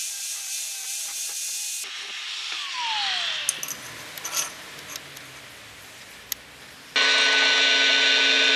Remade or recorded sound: recorded